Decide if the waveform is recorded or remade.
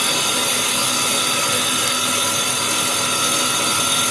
recorded